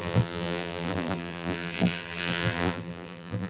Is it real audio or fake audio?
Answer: fake